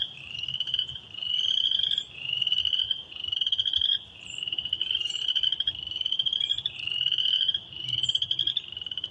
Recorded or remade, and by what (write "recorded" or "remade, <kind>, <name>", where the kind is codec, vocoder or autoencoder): remade, vocoder, BigVGAN v2